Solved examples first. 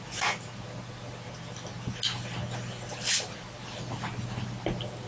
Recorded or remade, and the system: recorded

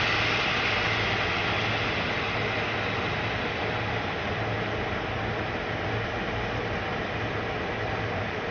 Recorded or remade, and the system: recorded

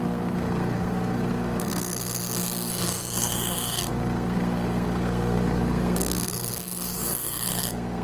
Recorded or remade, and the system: remade, codec, SNAC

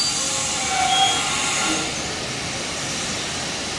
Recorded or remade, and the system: recorded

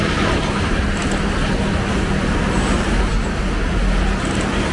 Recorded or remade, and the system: recorded